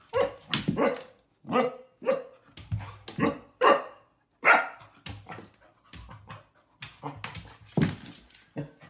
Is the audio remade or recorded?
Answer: recorded